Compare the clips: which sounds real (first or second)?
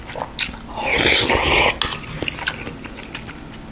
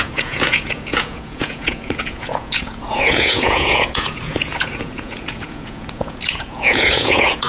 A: first